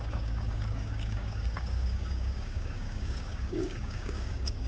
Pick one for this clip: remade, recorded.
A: remade